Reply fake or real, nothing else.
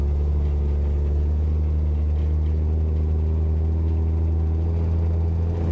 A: real